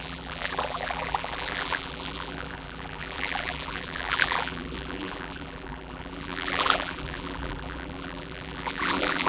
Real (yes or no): no